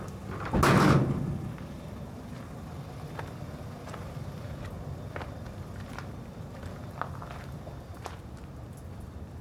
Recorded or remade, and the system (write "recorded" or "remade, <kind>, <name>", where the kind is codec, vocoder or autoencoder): recorded